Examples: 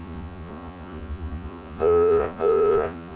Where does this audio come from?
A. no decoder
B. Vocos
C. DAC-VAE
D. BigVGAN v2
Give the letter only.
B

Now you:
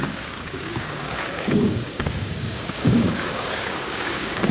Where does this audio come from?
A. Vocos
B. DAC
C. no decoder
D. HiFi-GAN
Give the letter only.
B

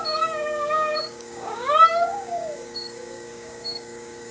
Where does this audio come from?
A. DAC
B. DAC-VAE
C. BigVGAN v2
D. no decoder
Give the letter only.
A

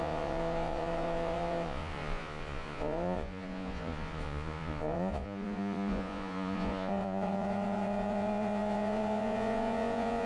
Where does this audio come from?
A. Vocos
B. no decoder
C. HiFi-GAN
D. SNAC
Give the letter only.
A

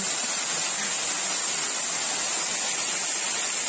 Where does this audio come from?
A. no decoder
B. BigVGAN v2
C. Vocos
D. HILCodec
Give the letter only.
A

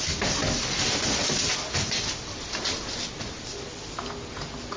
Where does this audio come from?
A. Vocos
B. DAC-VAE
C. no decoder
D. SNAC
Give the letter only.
C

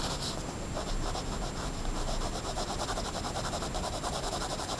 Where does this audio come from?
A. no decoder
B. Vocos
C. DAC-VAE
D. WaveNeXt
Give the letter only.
A